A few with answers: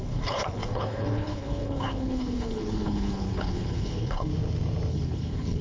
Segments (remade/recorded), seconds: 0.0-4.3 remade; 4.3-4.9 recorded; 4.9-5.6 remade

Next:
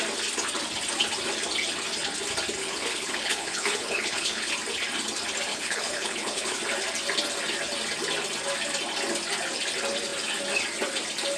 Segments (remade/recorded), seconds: 0.0-2.6 recorded; 2.6-4.5 remade; 4.5-5.5 recorded; 5.5-6.6 remade; 6.6-11.4 recorded